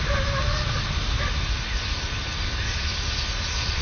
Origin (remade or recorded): recorded